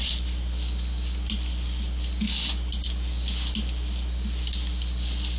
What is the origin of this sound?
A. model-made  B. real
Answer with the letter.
B